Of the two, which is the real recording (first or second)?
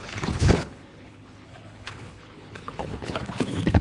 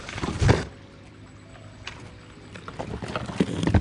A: second